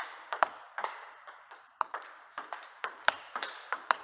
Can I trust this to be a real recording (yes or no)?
no